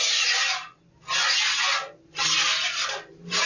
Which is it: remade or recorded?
recorded